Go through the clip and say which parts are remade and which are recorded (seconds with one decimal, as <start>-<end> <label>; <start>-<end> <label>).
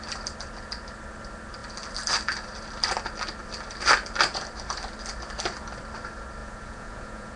0.0-6.4 recorded; 6.4-7.4 remade